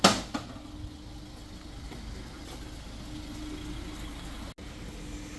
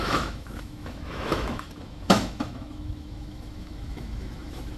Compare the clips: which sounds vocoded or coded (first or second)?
second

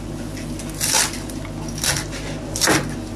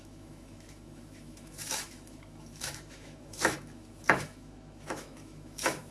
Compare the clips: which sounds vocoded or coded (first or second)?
second